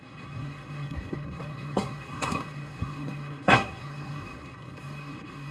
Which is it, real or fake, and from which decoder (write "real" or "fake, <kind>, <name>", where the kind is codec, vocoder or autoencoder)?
fake, codec, SNAC